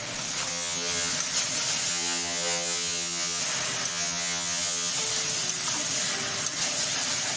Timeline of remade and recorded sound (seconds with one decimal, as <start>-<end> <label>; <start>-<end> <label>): 0.0-0.5 recorded; 0.5-1.1 remade; 1.1-1.9 recorded; 1.9-3.4 remade; 3.4-3.9 recorded; 3.9-4.9 remade; 4.9-7.4 recorded